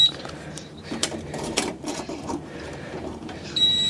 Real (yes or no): no